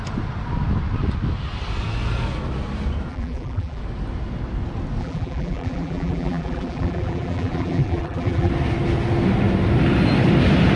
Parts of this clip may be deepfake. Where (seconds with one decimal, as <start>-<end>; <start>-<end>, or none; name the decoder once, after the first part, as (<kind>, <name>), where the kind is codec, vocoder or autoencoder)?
3.1-3.8 (vocoder, BigVGAN v2); 5.0-8.5